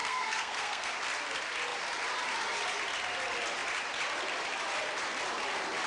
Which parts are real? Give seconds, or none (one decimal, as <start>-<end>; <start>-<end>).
0.9-5.9